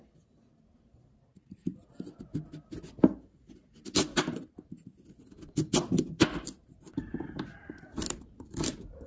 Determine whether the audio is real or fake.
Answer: real